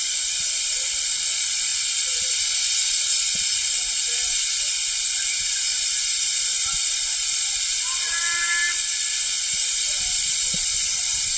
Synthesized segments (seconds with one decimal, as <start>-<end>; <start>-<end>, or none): 9.5-10.0